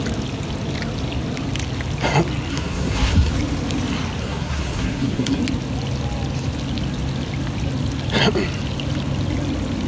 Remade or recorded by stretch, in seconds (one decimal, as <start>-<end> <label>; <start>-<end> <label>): 0.0-2.5 recorded; 2.5-3.3 remade; 3.3-4.2 recorded; 4.2-5.4 remade; 5.4-9.9 recorded